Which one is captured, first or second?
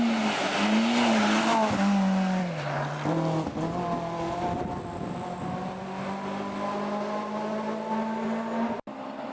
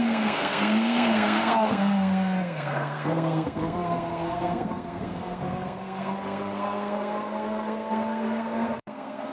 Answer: first